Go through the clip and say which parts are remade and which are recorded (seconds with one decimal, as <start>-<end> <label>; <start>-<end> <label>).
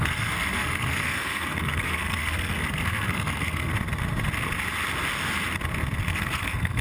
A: 0.0-3.7 remade; 3.7-6.0 recorded; 6.0-6.8 remade